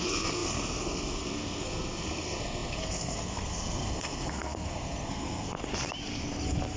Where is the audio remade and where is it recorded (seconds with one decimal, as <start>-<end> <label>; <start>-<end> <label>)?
0.0-5.7 remade; 5.7-6.8 recorded